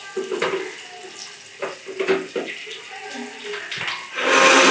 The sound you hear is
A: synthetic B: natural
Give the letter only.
B